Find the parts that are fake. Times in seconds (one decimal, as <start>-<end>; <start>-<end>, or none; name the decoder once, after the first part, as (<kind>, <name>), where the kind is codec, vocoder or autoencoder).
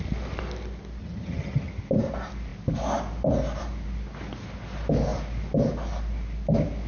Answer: 1.0-1.7 (vocoder, HiFi-GAN)